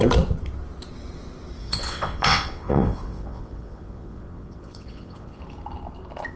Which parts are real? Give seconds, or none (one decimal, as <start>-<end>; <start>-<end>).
0.0-1.6; 5.4-6.4